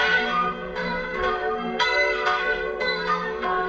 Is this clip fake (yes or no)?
yes